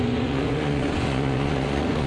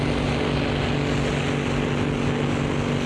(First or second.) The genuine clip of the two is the second